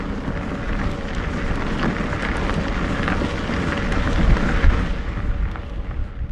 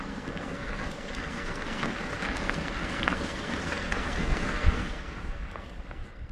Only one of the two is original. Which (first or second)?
first